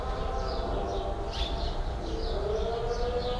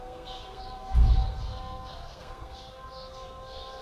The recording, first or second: first